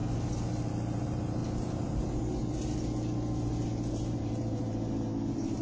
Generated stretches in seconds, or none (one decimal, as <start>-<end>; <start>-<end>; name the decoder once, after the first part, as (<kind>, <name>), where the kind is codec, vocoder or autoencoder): 0.7-1.4 (vocoder, BigVGAN v2); 4.2-5.6